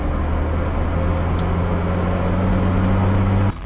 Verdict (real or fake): real